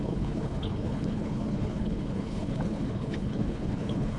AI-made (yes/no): yes